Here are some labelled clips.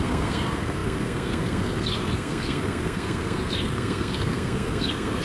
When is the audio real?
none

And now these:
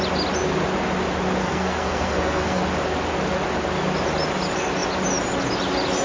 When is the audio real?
0.0-1.4; 2.6-6.0

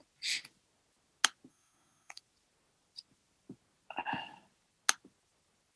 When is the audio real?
0.0-1.5; 2.2-5.8